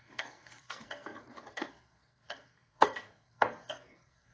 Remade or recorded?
remade